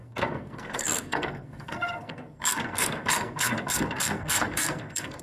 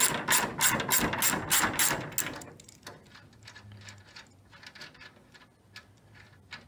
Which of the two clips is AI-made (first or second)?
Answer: first